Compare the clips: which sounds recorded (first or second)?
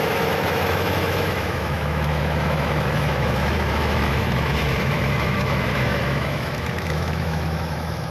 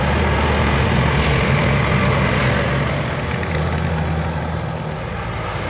second